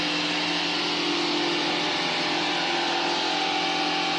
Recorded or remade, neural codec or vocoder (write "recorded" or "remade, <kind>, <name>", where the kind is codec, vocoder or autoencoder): recorded